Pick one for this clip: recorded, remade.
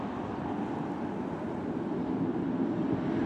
recorded